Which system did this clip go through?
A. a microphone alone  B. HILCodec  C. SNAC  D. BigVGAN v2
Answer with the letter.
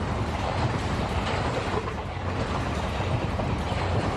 D